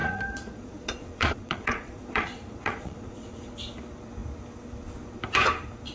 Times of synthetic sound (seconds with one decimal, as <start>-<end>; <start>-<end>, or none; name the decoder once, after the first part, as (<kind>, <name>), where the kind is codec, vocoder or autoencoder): 0.0-3.5 (vocoder, Vocos)